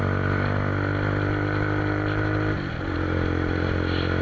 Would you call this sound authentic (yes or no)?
yes